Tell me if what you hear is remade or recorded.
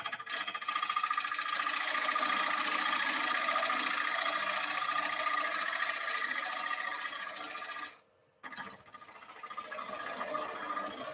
recorded